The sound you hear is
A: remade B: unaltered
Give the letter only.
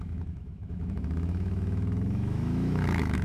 A